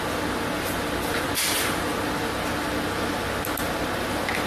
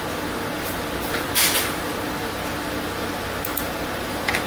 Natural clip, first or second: first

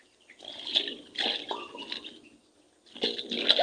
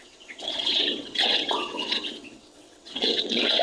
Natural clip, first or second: first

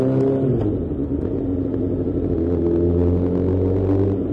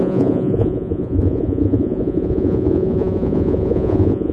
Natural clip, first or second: first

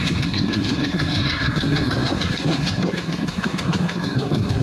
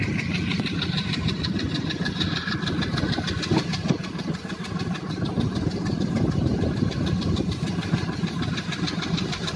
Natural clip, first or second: second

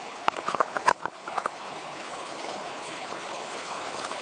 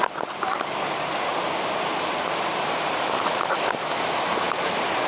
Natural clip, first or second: second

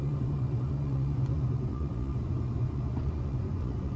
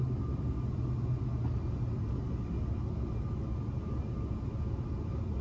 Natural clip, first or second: second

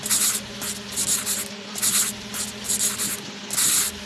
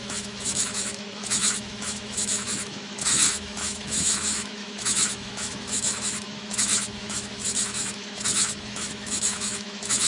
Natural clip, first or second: first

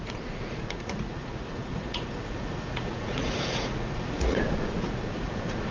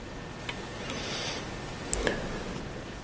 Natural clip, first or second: second